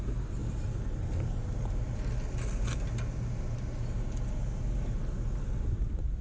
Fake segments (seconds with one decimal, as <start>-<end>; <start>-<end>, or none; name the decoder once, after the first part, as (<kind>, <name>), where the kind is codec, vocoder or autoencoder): none